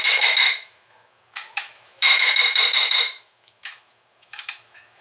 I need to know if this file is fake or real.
fake